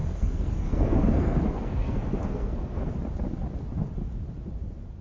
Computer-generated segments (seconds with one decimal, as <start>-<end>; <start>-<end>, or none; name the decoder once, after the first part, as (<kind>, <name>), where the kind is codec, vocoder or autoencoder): 0.0-2.9 (codec, SNAC)